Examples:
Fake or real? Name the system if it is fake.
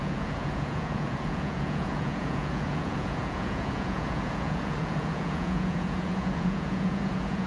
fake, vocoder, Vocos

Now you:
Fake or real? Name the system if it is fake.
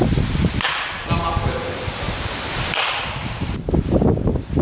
real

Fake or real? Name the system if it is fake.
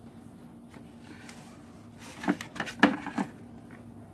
real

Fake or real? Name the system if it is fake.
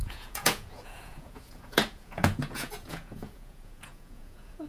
fake, vocoder, Vocos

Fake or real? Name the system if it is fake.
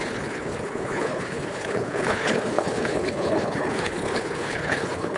fake, codec, HILCodec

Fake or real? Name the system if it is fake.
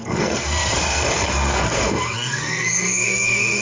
fake, codec, SNAC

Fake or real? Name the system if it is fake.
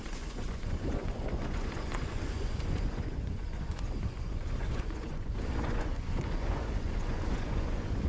fake, vocoder, Vocos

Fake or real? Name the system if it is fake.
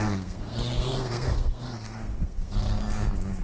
fake, codec, SNAC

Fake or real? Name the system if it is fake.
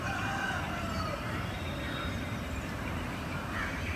fake, vocoder, BigVGAN v2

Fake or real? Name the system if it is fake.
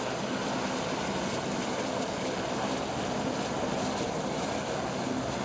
real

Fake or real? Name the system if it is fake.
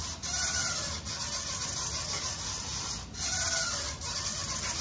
real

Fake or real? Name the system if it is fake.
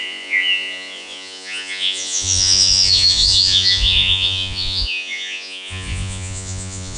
fake, vocoder, Vocos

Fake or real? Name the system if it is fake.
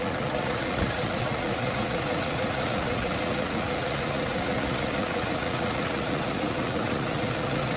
fake, vocoder, Vocos